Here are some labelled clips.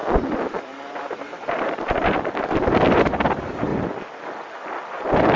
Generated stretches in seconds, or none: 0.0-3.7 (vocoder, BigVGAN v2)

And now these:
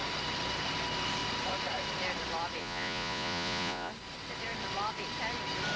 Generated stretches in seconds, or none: 2.6-3.9 (vocoder, Vocos)